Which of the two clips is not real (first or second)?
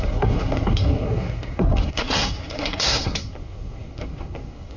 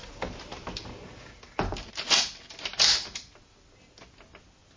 first